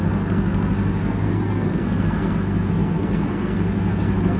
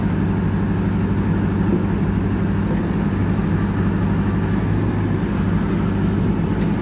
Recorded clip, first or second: second